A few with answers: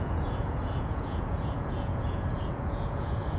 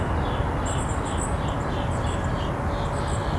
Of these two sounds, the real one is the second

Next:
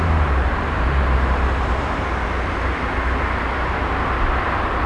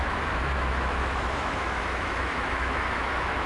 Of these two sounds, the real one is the first